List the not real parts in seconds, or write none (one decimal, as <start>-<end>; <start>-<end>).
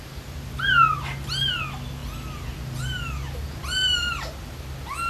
none